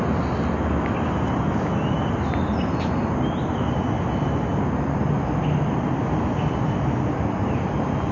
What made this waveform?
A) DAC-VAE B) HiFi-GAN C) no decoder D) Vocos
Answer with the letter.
C